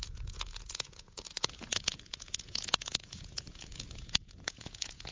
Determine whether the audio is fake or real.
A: fake